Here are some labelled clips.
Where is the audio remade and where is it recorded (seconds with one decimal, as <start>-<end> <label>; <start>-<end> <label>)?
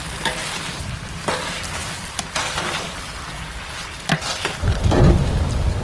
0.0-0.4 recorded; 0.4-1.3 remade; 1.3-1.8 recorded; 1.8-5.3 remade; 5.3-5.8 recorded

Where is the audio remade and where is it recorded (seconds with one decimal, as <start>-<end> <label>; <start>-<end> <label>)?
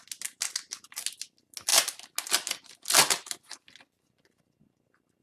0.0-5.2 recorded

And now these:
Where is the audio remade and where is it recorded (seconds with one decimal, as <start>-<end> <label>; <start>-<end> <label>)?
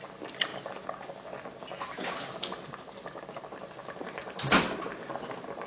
0.0-5.7 recorded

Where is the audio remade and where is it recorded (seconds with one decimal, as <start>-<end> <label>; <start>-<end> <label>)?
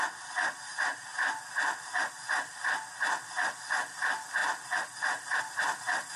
0.0-6.2 recorded